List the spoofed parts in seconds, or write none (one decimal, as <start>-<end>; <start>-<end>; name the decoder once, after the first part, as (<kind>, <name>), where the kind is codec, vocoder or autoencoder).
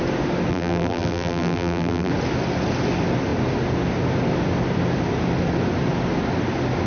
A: 0.5-2.1 (vocoder, BigVGAN v2)